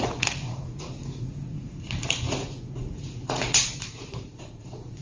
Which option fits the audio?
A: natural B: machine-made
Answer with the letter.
B